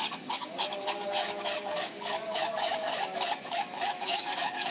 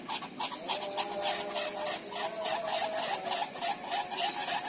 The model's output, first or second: first